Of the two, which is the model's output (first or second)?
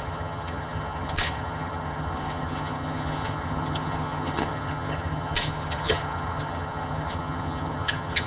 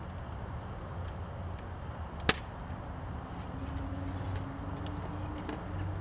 first